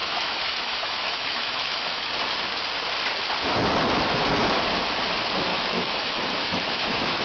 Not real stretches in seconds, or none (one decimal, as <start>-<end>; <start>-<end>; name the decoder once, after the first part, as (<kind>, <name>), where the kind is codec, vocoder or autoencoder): 0.0-2.1 (autoencoder, DAC-VAE); 5.5-7.2